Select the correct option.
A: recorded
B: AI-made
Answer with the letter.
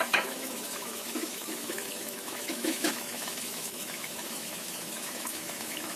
B